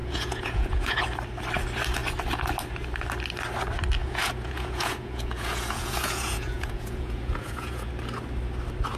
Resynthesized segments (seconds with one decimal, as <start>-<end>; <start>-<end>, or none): 0.0-1.0; 4.0-7.9